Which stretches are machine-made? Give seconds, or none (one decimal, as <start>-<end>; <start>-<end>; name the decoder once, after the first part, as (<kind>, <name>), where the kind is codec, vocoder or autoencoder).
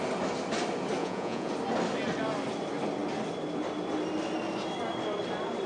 1.0-1.5 (vocoder, Vocos)